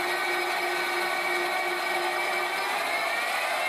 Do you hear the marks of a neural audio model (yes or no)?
no